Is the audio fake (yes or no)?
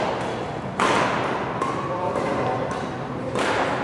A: no